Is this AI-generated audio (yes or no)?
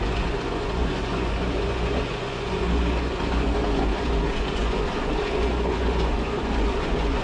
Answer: yes